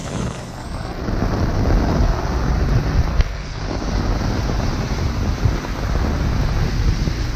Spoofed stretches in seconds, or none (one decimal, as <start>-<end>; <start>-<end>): 0.0-1.0; 3.1-3.6